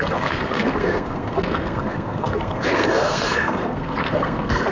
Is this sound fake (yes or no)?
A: yes